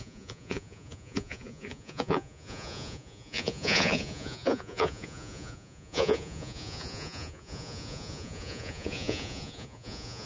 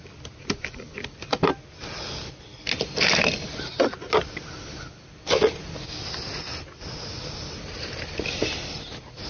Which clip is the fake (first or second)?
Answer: first